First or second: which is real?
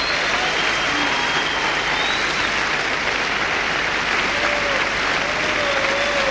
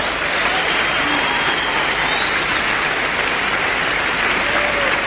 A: first